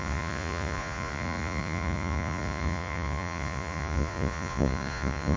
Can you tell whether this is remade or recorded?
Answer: remade